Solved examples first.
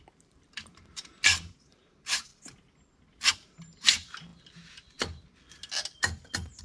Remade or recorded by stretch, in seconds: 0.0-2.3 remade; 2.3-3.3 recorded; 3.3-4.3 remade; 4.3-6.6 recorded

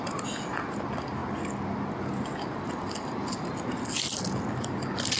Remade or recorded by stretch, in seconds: 0.0-5.2 recorded

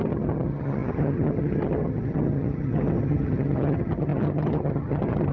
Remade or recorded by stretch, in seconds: 0.0-5.3 remade

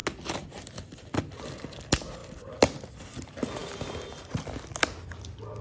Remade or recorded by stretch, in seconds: 0.0-5.6 recorded

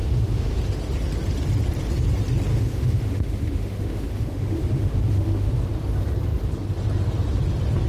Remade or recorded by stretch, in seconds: 0.0-0.6 remade; 0.6-2.5 recorded; 2.5-5.5 remade; 5.5-7.9 recorded

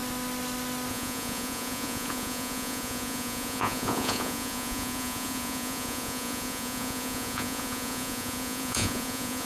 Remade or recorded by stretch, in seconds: 0.0-0.9 recorded; 0.9-9.5 remade